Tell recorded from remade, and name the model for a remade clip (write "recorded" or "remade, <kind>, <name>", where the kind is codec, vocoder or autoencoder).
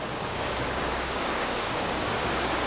remade, codec, DAC